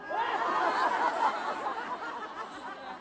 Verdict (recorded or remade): recorded